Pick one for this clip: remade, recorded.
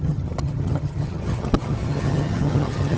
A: remade